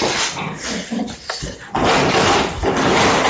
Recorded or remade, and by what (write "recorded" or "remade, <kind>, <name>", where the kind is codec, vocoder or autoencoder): recorded